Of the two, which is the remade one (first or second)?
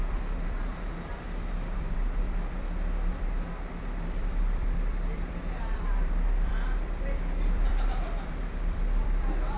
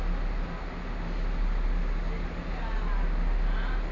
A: first